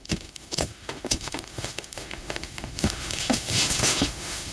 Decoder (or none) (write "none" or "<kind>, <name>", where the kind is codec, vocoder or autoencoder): autoencoder, DAC-VAE